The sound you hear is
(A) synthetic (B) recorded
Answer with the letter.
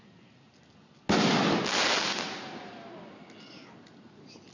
B